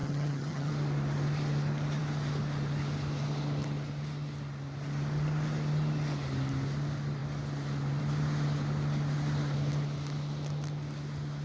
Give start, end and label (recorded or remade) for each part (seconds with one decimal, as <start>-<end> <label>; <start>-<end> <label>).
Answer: 0.0-0.7 remade; 0.7-11.4 recorded